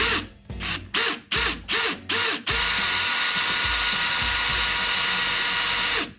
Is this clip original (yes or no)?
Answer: yes